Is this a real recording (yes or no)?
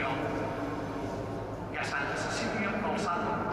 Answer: yes